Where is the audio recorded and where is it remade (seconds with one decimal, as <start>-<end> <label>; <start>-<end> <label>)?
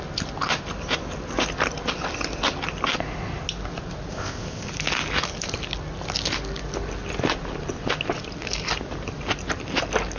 0.0-4.1 recorded; 4.1-4.7 remade; 4.7-10.2 recorded